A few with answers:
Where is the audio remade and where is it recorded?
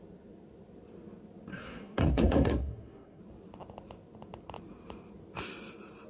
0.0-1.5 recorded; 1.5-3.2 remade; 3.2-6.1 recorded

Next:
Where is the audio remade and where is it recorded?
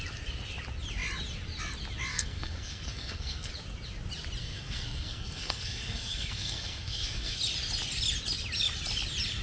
0.0-2.1 recorded; 2.1-3.5 remade; 3.5-4.4 recorded; 4.4-7.4 remade; 7.4-9.4 recorded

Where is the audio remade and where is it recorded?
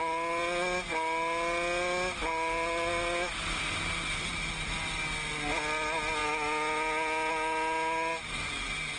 0.0-9.0 recorded